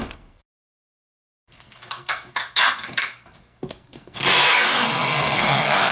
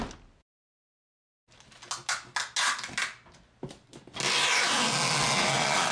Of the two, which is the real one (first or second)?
second